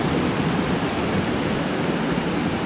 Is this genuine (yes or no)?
yes